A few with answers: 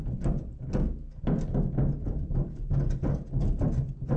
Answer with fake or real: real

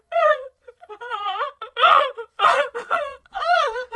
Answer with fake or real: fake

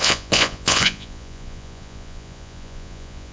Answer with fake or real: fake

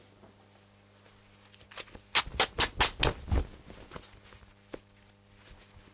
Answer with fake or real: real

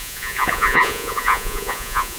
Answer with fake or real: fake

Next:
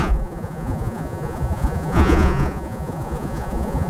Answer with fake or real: fake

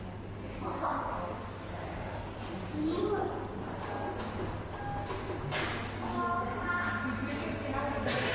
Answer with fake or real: real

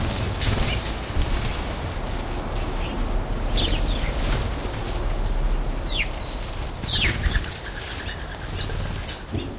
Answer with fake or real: real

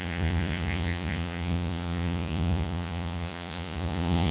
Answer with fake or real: fake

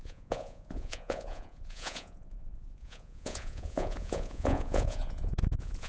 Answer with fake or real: fake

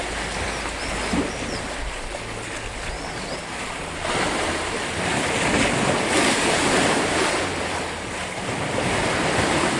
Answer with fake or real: real